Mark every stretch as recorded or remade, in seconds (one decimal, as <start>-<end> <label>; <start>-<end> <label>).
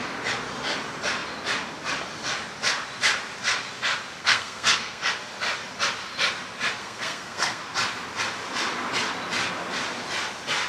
0.0-4.2 recorded; 4.2-5.0 remade; 5.0-6.8 recorded; 6.8-7.6 remade; 7.6-10.7 recorded